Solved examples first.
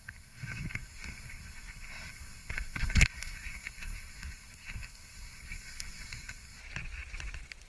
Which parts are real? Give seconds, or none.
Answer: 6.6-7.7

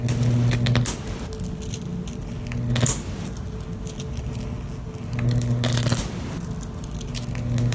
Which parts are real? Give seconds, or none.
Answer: 0.0-7.7

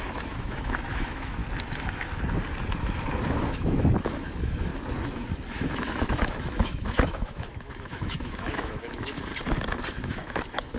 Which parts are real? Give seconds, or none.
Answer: 1.4-3.4; 4.7-5.5; 9.3-9.9